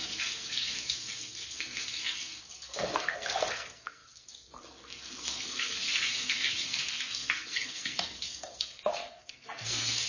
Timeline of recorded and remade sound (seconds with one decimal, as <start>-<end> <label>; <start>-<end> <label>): 0.0-10.1 remade